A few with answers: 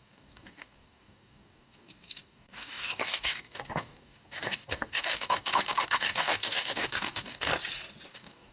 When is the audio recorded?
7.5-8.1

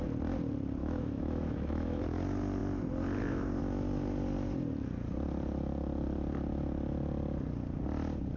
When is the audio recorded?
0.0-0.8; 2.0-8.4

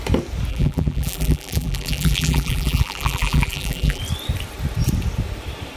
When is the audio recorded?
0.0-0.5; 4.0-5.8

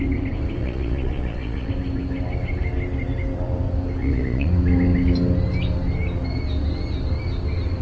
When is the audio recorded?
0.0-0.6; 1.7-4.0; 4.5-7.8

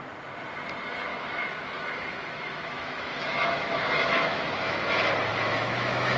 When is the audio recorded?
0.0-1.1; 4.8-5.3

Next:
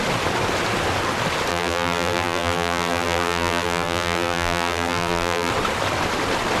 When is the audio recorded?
0.0-1.5; 5.5-6.6

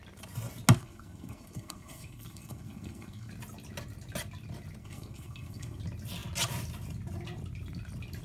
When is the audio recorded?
0.0-0.8; 3.3-4.8; 5.8-8.2

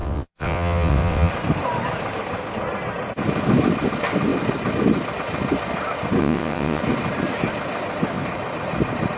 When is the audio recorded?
1.3-6.2; 6.8-9.2